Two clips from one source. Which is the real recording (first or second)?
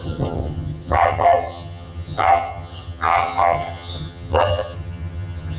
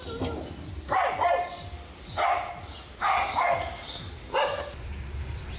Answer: second